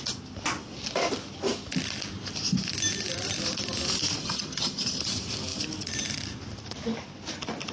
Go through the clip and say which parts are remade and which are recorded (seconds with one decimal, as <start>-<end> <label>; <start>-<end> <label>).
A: 0.0-4.2 recorded; 4.2-5.0 remade; 5.0-7.7 recorded